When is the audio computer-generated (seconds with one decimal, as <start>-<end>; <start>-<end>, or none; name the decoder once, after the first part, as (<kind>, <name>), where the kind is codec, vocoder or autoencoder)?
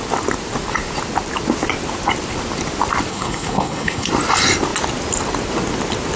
3.1-4.1 (codec, HILCodec)